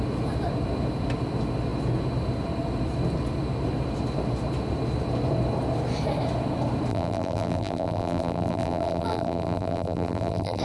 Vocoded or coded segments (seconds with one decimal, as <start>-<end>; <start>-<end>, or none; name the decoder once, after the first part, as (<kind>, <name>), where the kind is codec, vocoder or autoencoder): 6.9-10.6 (vocoder, BigVGAN v2)